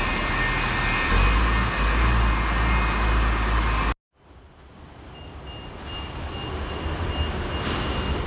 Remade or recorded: recorded